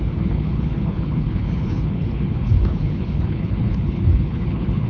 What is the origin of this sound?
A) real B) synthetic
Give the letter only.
B